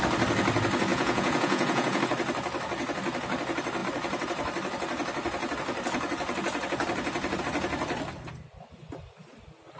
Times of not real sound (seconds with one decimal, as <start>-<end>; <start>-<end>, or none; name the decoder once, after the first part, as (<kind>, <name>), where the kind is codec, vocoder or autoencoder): 0.9-2.0 (vocoder, Vocos)

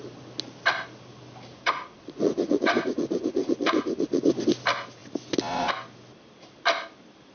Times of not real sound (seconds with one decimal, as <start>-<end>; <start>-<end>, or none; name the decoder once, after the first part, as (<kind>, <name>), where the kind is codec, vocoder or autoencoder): 1.5-4.2 (vocoder, Vocos)

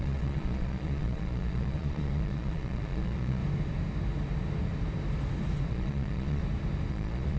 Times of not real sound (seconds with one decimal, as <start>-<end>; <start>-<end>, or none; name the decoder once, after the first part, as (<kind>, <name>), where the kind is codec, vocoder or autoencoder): 0.0-3.4 (vocoder, Vocos); 5.7-6.4; 6.9-7.4